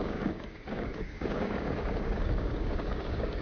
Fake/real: fake